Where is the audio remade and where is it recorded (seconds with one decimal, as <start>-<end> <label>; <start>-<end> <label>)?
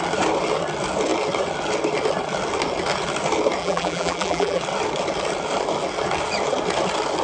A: 0.0-3.6 recorded; 3.6-4.6 remade; 4.6-7.2 recorded